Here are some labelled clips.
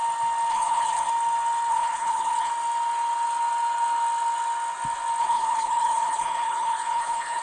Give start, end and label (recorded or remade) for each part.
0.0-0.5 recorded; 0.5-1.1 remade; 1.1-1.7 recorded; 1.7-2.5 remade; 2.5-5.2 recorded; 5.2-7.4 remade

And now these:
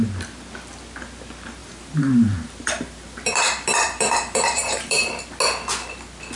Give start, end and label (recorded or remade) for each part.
0.0-1.6 recorded; 1.6-5.1 remade; 5.1-6.4 recorded

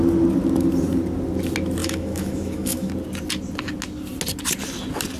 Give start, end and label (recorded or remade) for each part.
0.0-1.8 recorded; 1.8-2.9 remade; 2.9-5.2 recorded

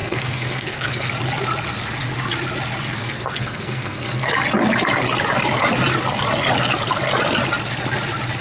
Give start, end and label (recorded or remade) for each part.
0.0-1.1 remade; 1.1-3.0 recorded; 3.0-4.3 remade; 4.3-8.4 recorded

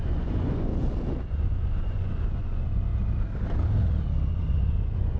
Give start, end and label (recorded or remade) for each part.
0.0-0.7 remade; 0.7-1.3 recorded; 1.3-2.9 remade; 2.9-4.3 recorded; 4.3-5.2 remade

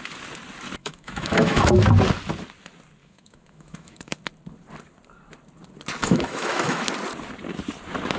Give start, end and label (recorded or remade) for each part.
0.0-0.8 recorded; 0.8-1.8 remade; 1.8-3.0 recorded; 3.0-4.2 remade; 4.2-6.0 recorded; 6.0-6.8 remade; 6.8-8.2 recorded

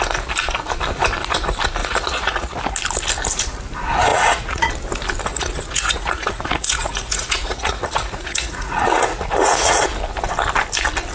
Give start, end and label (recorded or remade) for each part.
0.0-1.8 recorded; 1.8-2.6 remade; 2.6-4.1 recorded; 4.1-4.7 remade; 4.7-5.3 recorded; 5.3-9.8 remade; 9.8-11.1 recorded